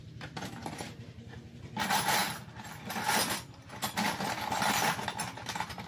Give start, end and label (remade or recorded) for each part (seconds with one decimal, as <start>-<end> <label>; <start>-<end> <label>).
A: 0.0-1.7 remade; 1.7-5.9 recorded